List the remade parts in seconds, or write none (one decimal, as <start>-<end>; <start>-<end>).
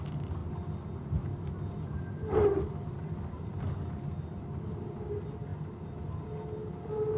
none